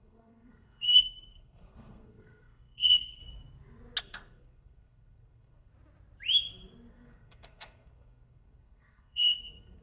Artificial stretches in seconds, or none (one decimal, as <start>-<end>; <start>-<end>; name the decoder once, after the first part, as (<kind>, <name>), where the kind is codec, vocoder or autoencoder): 0.0-3.2 (codec, SNAC); 4.0-5.7; 6.9-9.8

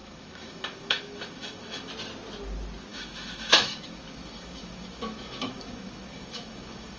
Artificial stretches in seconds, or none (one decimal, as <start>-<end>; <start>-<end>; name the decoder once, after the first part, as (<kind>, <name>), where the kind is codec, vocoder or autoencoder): 0.0-1.9 (autoencoder, DAC-VAE); 2.9-7.0

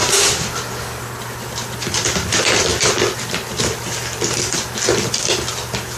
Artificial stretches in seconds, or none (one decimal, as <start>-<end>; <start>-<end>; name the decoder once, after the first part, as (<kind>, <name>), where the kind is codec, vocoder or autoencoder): none